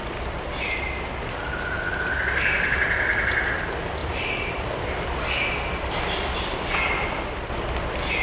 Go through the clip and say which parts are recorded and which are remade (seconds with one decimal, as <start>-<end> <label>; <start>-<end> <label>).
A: 0.0-4.0 recorded; 4.0-7.6 remade; 7.6-8.2 recorded